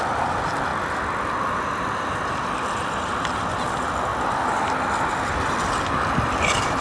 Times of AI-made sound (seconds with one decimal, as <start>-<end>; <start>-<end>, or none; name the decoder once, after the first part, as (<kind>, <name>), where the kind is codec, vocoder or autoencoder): 0.0-0.7 (vocoder, BigVGAN v2); 1.8-6.8